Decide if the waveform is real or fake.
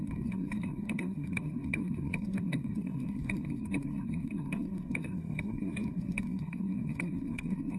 fake